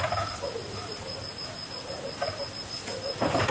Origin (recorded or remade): recorded